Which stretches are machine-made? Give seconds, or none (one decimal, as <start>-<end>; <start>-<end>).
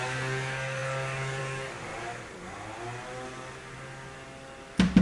0.0-1.9